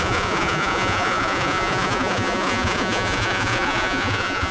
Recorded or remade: remade